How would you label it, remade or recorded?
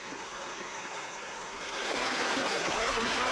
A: remade